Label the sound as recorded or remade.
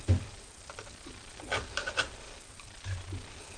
remade